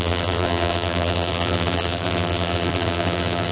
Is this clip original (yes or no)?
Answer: no